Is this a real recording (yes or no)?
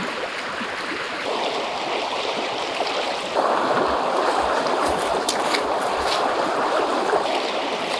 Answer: yes